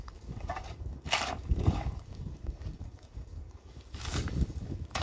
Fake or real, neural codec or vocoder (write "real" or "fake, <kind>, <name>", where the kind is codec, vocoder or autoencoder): fake, codec, DAC